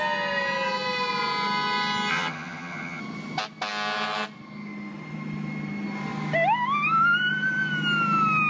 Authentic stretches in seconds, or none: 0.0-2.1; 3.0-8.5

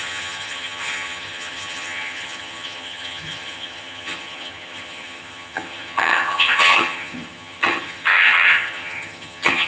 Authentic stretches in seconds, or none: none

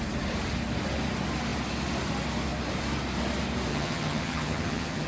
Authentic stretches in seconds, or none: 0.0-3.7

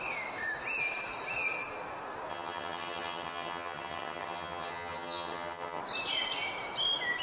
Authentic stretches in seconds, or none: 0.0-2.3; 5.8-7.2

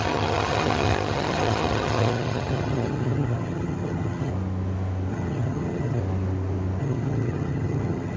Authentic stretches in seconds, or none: 4.3-5.1; 6.0-6.8

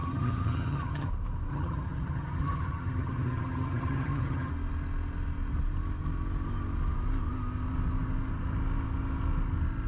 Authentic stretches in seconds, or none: 1.1-1.5; 4.5-9.9

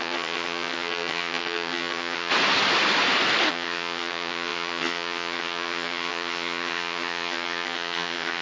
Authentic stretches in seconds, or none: 2.3-3.5

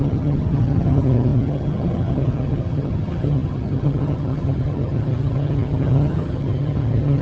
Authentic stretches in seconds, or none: none